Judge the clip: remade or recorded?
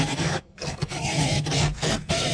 remade